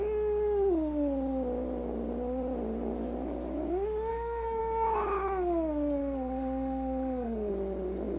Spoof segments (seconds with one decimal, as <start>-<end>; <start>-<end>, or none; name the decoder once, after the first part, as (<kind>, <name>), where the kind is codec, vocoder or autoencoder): 4.1-4.6 (codec, SNAC); 6.0-7.5